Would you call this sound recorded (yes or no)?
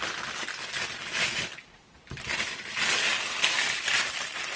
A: yes